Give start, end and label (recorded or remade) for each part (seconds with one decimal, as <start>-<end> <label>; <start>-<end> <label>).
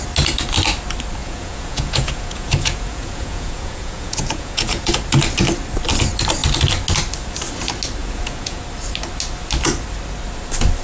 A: 0.0-1.2 recorded; 1.2-4.9 remade; 4.9-8.0 recorded; 8.0-8.6 remade; 8.6-10.8 recorded